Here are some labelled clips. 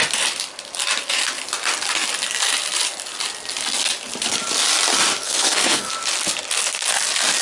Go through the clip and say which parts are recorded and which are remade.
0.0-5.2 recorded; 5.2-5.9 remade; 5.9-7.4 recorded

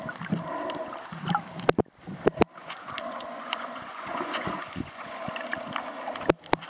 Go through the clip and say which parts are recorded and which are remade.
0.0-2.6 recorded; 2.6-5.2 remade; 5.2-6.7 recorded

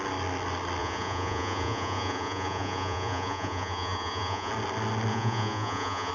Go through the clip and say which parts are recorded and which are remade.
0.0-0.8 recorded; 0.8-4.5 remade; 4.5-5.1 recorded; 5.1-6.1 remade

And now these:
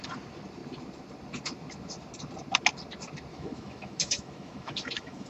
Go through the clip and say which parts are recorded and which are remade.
0.0-3.3 recorded; 3.3-5.3 remade